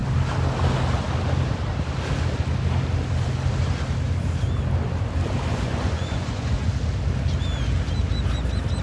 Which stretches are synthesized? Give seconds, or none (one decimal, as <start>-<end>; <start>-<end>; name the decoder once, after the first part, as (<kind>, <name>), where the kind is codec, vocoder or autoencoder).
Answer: 5.5-6.7 (vocoder, Vocos)